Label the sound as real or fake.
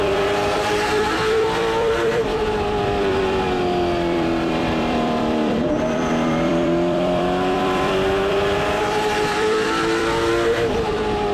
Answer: fake